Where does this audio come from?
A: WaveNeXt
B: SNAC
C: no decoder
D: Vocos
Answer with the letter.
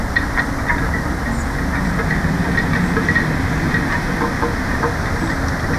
C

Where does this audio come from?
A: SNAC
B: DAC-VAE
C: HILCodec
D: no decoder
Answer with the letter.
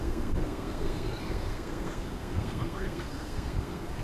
A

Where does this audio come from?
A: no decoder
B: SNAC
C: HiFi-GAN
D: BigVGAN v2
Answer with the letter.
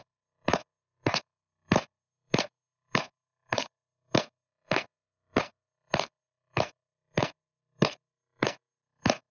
B